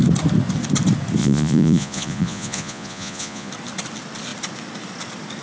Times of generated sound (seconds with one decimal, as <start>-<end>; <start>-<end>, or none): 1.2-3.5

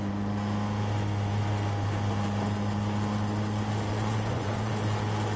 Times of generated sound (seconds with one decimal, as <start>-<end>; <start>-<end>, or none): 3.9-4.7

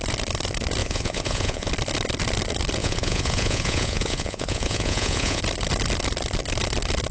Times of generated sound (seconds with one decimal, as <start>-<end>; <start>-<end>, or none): 0.8-1.7; 2.8-5.4

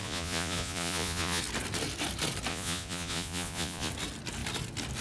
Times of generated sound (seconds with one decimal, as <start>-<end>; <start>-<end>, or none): 0.0-1.4; 2.5-3.9

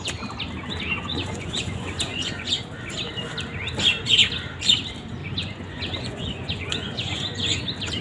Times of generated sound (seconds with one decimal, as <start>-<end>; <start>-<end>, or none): 1.1-2.5; 5.2-7.6